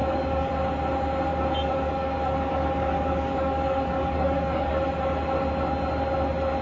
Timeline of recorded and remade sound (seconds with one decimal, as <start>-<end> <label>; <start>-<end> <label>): 0.0-0.5 remade; 0.5-1.3 recorded; 1.3-4.7 remade; 4.7-6.6 recorded